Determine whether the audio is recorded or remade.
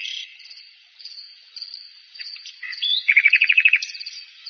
remade